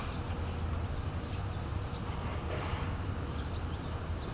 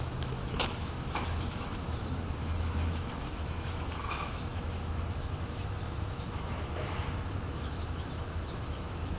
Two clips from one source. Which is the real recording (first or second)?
first